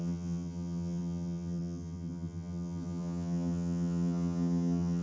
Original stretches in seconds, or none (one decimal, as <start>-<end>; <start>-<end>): none